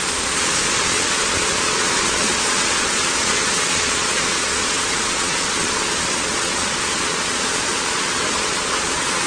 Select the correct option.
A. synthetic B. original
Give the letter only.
A